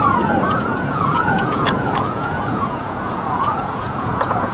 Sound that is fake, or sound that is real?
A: fake